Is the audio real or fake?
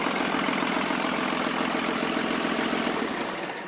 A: real